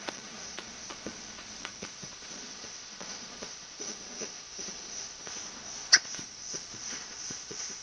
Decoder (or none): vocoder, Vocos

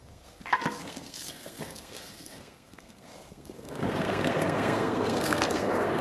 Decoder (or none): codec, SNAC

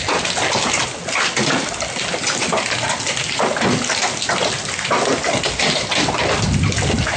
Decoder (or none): none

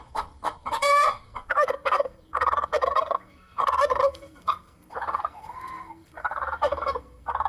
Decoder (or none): codec, SNAC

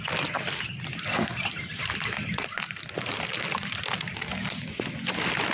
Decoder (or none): none